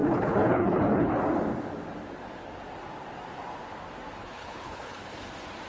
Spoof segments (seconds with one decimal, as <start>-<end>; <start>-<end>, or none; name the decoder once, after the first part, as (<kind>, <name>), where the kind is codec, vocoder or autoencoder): 0.0-1.2 (codec, HILCodec); 4.2-5.0